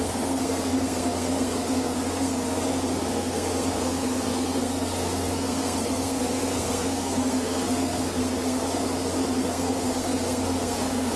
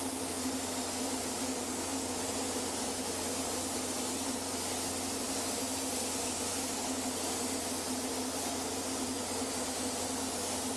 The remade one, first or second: first